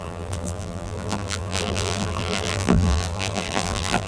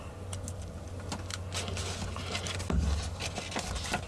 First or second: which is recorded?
second